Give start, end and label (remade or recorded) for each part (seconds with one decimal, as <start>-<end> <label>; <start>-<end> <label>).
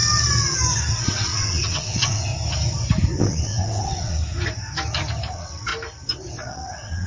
0.0-0.9 recorded; 0.9-2.3 remade; 2.3-3.2 recorded; 3.2-4.2 remade; 4.2-5.3 recorded; 5.3-5.7 remade; 5.7-6.3 recorded; 6.3-7.1 remade